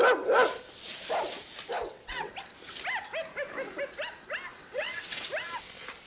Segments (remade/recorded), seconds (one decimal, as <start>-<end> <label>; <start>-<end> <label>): 0.0-1.8 recorded; 1.8-2.3 remade; 2.3-4.5 recorded; 4.5-5.3 remade; 5.3-6.1 recorded